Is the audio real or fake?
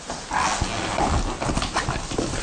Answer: real